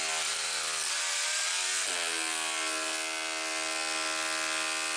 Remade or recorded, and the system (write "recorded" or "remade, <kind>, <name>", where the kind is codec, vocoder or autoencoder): recorded